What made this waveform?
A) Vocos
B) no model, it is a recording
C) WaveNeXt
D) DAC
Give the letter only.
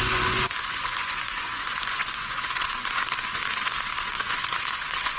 A